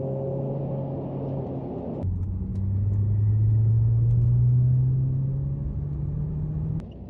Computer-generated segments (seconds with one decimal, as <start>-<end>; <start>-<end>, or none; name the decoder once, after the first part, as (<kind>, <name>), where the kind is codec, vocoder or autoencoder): none